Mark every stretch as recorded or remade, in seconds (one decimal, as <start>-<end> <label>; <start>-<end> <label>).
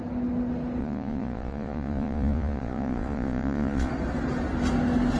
0.0-0.8 recorded; 0.8-3.9 remade; 3.9-5.2 recorded